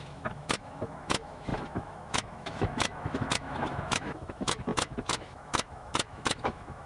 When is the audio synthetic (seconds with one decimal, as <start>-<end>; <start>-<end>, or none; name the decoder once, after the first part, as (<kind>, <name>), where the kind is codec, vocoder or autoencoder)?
0.0-6.9 (autoencoder, DAC-VAE)